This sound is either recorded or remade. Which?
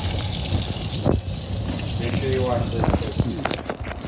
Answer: recorded